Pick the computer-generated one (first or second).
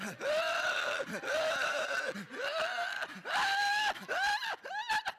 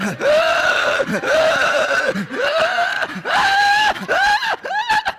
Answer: second